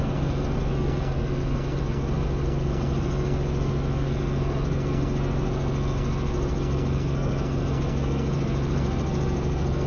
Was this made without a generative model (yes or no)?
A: no